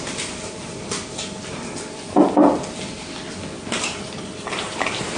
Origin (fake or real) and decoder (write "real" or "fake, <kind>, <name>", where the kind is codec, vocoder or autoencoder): real